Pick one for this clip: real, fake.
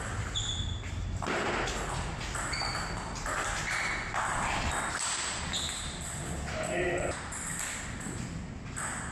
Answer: real